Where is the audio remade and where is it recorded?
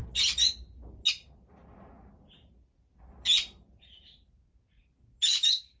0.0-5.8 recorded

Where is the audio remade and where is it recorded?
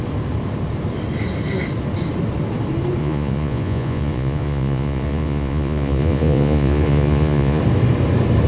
0.0-3.0 recorded; 3.0-7.6 remade; 7.6-8.5 recorded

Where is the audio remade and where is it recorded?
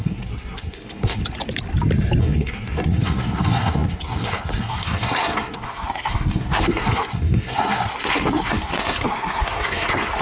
0.0-1.2 remade; 1.2-2.2 recorded; 2.2-10.2 remade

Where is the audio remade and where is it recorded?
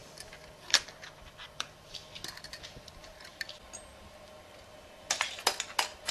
0.0-2.0 remade; 2.0-2.6 recorded; 2.6-3.3 remade; 3.3-6.1 recorded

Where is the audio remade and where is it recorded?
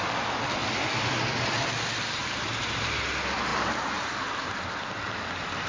0.0-2.2 recorded; 2.2-3.1 remade; 3.1-3.5 recorded; 3.5-4.6 remade; 4.6-5.7 recorded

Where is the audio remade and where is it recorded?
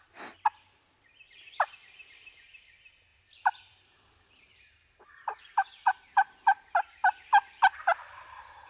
0.0-3.1 recorded; 3.1-7.7 remade; 7.7-8.7 recorded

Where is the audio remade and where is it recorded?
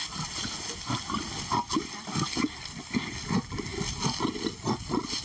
0.0-5.2 recorded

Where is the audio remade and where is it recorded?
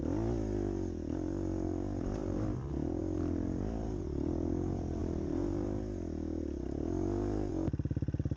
0.0-8.4 recorded